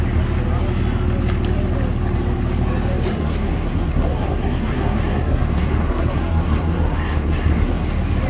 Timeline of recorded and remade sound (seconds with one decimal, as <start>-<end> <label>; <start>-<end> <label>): 0.0-3.1 recorded; 3.1-7.9 remade; 7.9-8.3 recorded